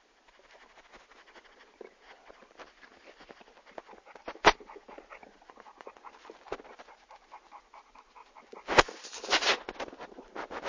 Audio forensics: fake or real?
real